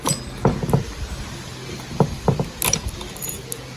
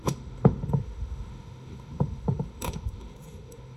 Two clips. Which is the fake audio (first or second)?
second